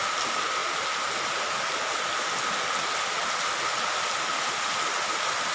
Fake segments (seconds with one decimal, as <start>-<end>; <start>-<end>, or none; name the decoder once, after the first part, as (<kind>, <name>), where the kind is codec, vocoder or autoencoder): none